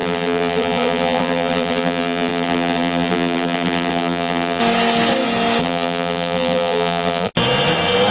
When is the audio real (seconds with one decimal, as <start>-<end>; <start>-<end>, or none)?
4.6-5.6; 7.3-8.1